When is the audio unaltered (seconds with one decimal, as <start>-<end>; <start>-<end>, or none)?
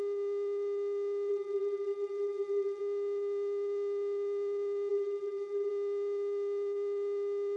0.0-1.3; 2.8-4.9; 5.7-7.6